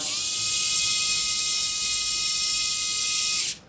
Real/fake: real